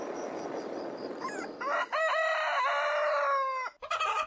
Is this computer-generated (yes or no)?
no